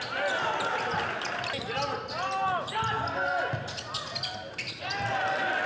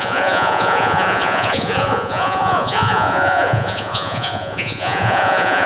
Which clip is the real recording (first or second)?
first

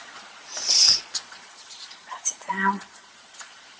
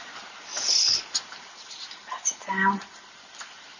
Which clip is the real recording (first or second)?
second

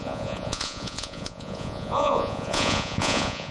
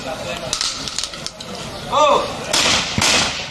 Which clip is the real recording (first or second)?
second